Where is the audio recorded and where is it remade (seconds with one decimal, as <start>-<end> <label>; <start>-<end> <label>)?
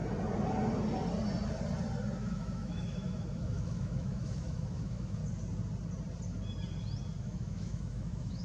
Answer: 0.0-2.2 recorded; 2.2-5.2 remade; 5.2-7.2 recorded; 7.2-8.4 remade